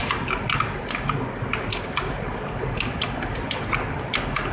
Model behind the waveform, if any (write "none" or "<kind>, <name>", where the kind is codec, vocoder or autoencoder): none